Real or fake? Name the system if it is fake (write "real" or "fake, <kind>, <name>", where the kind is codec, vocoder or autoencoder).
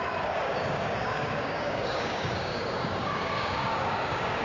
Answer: fake, codec, DAC